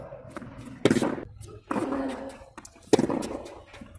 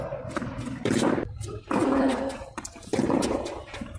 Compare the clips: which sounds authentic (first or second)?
first